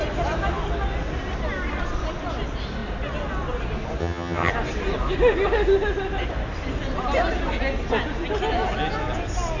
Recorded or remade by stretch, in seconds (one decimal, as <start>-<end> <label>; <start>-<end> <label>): 0.0-4.0 recorded; 4.0-4.5 remade; 4.5-9.6 recorded